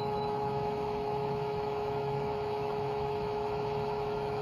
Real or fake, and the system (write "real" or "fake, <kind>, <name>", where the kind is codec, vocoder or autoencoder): fake, autoencoder, DAC-VAE